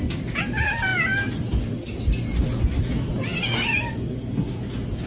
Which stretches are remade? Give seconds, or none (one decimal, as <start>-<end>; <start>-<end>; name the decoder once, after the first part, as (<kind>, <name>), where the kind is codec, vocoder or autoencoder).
none